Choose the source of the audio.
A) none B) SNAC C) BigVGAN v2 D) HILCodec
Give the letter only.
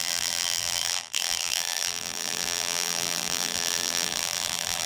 C